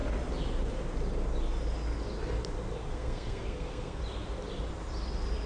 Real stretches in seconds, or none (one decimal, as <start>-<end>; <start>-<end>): 0.0-2.9; 4.0-5.5